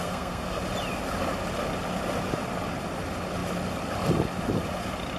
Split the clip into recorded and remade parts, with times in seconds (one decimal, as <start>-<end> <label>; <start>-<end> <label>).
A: 0.0-0.6 remade; 0.6-5.2 recorded